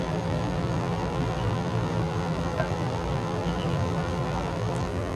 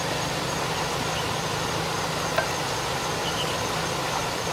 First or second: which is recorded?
second